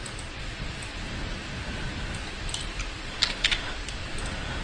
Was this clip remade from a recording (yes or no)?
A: no